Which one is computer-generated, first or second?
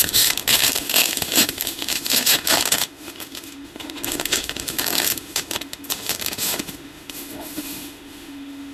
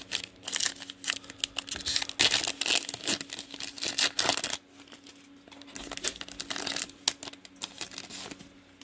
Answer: first